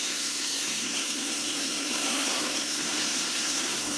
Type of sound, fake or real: fake